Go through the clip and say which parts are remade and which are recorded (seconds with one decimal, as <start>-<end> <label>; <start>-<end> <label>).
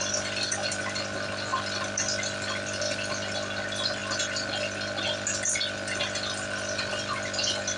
0.0-7.8 recorded